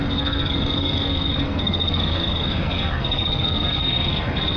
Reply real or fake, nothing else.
fake